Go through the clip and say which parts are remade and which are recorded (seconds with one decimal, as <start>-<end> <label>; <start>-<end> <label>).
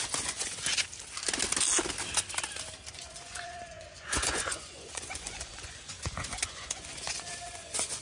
0.0-0.7 remade; 0.7-2.9 recorded; 2.9-8.0 remade